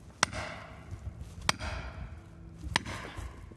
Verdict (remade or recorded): recorded